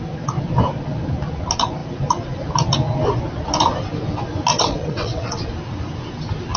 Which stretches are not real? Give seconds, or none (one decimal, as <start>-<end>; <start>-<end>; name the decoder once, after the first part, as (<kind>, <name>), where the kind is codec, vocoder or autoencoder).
4.5-5.4 (vocoder, WaveNeXt)